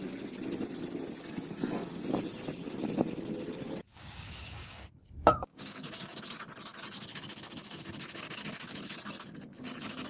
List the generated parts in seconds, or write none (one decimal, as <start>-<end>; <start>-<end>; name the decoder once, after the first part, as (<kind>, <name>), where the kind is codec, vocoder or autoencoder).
1.2-2.0 (codec, DAC); 3.9-4.9; 5.5-6.2

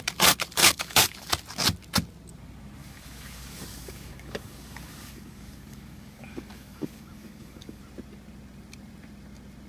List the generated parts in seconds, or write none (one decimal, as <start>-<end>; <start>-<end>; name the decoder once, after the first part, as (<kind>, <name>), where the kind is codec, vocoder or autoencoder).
0.6-1.3 (codec, DAC); 2.8-7.8

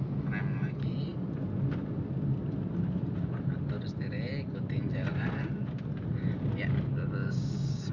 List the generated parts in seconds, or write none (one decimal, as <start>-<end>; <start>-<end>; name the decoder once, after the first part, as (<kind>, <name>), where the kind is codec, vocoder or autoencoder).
7.2-7.9 (codec, DAC)

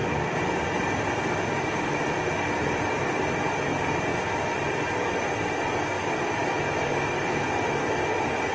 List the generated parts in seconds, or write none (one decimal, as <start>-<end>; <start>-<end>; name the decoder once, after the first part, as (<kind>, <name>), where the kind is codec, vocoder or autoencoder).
none

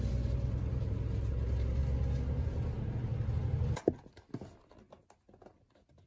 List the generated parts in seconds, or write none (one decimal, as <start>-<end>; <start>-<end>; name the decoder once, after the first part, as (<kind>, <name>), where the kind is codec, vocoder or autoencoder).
none